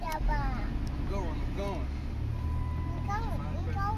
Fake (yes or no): no